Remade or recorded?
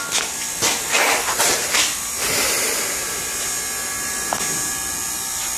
recorded